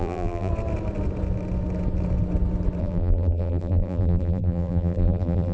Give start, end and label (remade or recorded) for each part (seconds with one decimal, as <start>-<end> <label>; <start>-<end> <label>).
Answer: 0.0-0.5 remade; 0.5-2.8 recorded; 2.8-5.5 remade